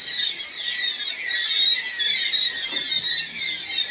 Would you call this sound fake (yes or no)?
no